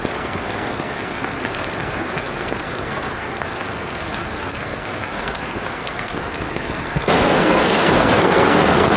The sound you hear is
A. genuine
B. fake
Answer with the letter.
B